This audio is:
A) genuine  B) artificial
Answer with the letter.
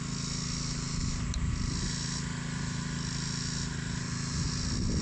A